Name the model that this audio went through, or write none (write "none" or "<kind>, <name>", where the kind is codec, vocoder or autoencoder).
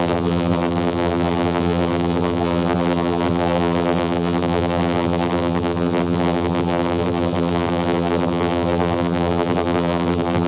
vocoder, BigVGAN v2